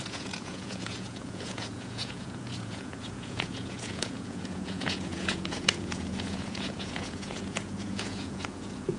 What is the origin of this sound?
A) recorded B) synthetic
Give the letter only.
B